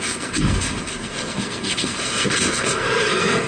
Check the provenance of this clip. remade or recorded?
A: remade